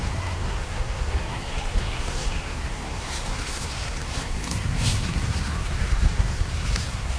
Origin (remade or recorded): remade